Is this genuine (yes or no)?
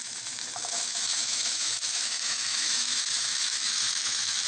no